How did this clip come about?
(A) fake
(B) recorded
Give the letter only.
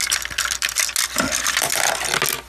B